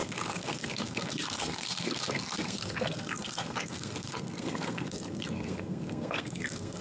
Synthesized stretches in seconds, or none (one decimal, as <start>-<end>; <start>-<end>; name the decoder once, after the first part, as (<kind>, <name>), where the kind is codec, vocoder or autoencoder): 0.0-6.8 (codec, SNAC)